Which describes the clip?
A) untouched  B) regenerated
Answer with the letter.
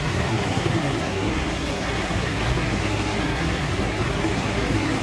B